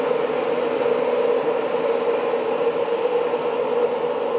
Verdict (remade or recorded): recorded